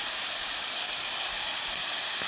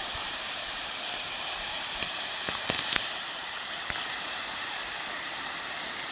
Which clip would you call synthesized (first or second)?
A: second